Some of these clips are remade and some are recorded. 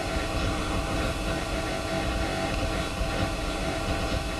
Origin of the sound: remade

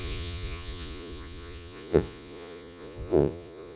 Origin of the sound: remade